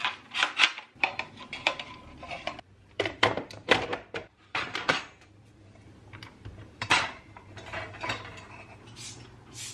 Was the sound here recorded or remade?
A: remade